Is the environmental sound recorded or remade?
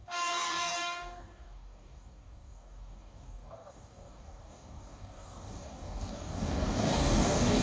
remade